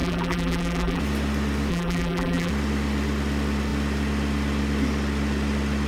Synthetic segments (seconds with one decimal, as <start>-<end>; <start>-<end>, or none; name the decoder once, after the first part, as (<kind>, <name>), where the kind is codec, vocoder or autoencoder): 0.0-1.0 (vocoder, BigVGAN v2); 1.7-2.5